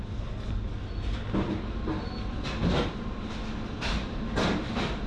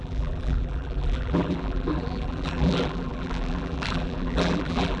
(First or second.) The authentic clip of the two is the first